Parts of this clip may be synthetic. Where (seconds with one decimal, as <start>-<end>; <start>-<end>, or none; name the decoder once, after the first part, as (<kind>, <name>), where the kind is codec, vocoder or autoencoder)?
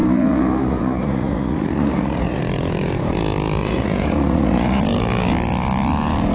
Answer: 0.0-2.4 (vocoder, Vocos); 3.6-4.8